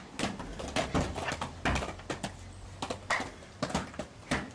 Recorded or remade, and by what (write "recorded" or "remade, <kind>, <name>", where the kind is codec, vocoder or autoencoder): recorded